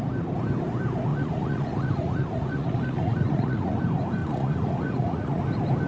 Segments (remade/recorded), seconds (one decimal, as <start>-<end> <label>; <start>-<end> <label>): 0.0-1.1 recorded; 1.1-3.8 remade; 3.8-4.2 recorded; 4.2-5.4 remade; 5.4-5.9 recorded